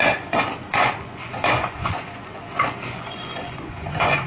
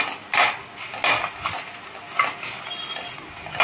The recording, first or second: second